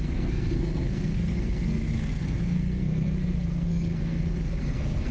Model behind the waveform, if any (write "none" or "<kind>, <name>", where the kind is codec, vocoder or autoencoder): codec, SNAC